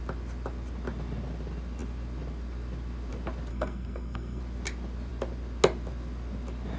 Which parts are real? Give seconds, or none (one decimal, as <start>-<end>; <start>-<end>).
0.0-3.5; 4.4-6.8